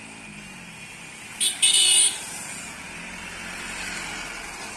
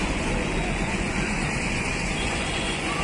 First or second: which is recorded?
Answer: first